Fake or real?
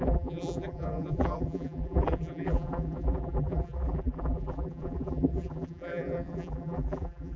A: fake